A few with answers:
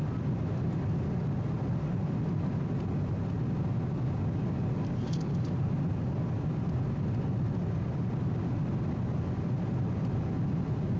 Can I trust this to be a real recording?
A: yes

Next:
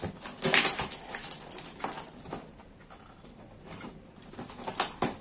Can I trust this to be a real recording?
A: yes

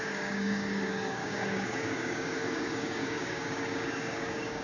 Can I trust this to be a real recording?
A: no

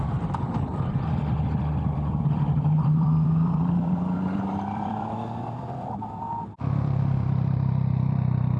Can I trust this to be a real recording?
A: no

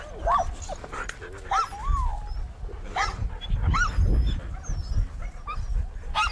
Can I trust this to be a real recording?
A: yes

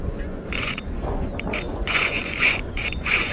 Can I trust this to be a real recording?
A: no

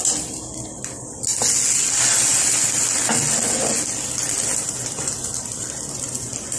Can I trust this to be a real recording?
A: yes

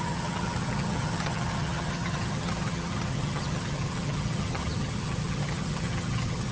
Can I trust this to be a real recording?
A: no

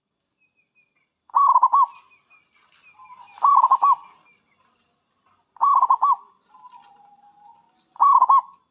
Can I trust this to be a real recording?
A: yes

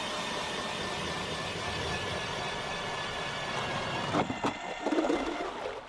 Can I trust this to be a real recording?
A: no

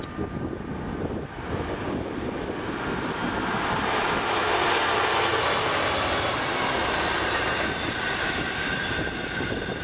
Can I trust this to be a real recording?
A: yes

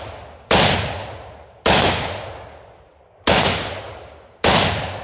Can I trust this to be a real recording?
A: yes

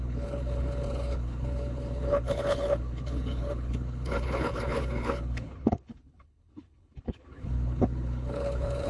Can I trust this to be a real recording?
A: no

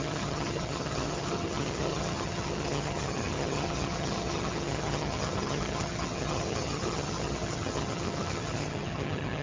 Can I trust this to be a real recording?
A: no